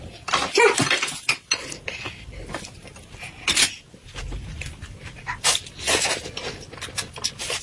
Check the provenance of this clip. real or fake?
real